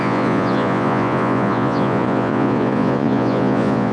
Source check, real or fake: fake